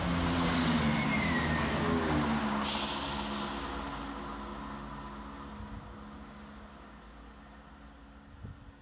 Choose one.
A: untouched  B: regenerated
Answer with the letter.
A